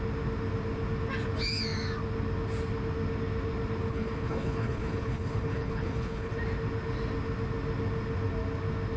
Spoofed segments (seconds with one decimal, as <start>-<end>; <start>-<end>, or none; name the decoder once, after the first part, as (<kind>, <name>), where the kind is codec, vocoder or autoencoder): 3.9-6.3 (codec, HILCodec)